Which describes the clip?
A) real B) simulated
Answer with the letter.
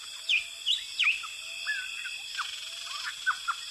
A